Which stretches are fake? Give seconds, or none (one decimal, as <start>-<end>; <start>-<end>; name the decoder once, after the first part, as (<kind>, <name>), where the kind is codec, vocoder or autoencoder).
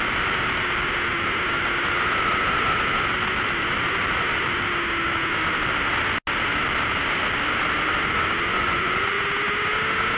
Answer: 8.5-9.2 (vocoder, Vocos)